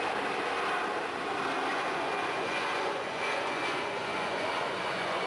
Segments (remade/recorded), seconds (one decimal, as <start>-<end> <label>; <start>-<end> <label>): 0.0-1.7 recorded; 1.7-5.3 remade